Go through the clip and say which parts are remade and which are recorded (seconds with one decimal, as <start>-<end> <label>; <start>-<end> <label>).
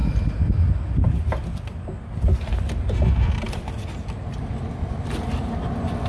0.0-6.1 recorded